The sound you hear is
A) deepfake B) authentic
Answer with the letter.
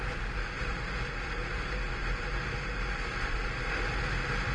B